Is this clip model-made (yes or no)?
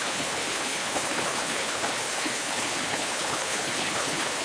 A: yes